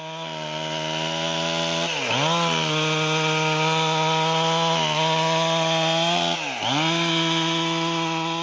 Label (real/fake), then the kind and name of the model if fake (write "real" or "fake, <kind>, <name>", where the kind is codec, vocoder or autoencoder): real